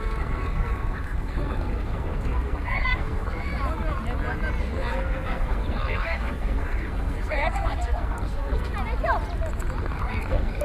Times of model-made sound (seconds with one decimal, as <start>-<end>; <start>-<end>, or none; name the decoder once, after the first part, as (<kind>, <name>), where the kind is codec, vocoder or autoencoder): 0.0-3.5 (codec, SNAC); 4.6-8.7; 9.8-10.6